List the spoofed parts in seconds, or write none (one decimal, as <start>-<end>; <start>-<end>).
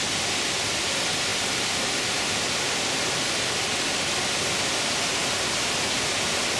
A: none